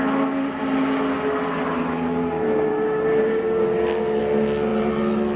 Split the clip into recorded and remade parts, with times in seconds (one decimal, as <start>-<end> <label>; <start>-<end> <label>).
0.0-2.7 recorded; 2.7-4.2 remade; 4.2-5.4 recorded